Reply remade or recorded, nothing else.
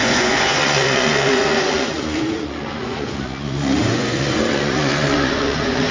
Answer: remade